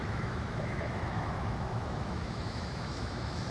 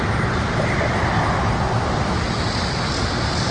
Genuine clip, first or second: second